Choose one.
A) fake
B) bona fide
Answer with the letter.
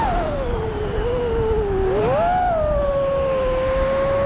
B